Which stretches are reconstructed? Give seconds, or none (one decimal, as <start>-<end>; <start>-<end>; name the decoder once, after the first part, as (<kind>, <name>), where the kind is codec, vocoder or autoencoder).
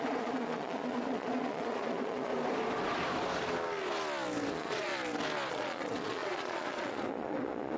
0.0-2.3 (vocoder, Vocos); 4.5-4.9; 5.5-7.8